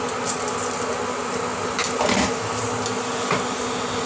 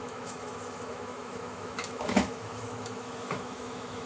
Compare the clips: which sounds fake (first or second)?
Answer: second